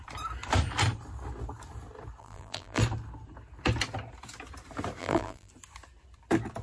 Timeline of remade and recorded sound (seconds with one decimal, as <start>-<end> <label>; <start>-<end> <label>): 0.0-2.2 recorded; 2.2-2.8 remade; 2.8-5.0 recorded; 5.0-5.5 remade; 5.5-6.6 recorded